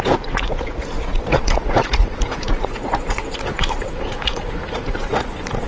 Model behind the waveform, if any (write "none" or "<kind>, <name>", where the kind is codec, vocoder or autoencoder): vocoder, Vocos